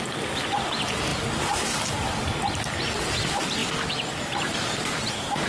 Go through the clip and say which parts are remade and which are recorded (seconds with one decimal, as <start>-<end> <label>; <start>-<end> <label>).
0.0-5.5 recorded